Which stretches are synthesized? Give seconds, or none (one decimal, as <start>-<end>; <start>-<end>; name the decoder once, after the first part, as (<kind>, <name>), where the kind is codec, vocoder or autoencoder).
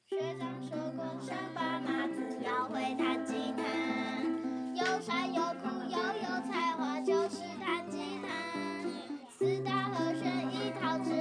0.0-4.5 (vocoder, BigVGAN v2); 5.1-7.7; 9.7-11.2